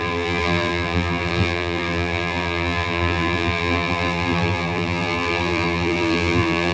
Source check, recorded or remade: remade